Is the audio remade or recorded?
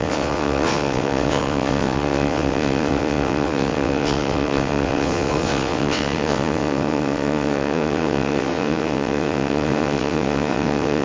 remade